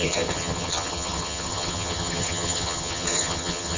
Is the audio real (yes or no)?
no